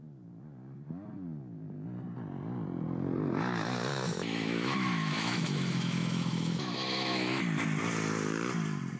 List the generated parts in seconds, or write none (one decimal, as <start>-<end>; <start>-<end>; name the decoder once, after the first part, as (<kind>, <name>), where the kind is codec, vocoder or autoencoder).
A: 3.9-7.4 (autoencoder, DAC-VAE)